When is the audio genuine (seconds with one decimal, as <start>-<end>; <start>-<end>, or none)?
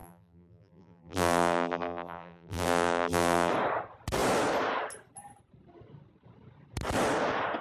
3.5-7.6